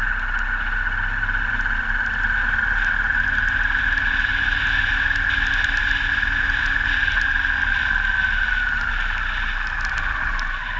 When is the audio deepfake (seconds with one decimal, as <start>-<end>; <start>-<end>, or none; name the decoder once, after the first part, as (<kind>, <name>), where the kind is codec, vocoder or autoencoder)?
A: none